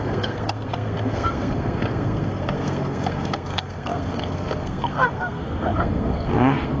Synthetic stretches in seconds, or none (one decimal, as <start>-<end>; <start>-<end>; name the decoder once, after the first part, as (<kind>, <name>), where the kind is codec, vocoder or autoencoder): 0.0-6.8 (codec, SNAC)